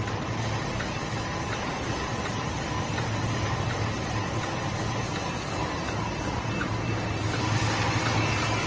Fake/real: real